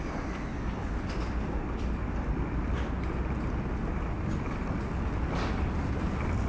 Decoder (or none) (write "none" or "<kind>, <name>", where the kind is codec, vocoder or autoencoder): none